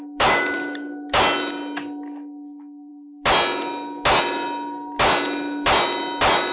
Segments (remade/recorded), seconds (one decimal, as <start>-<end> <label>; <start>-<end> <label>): 0.0-6.5 recorded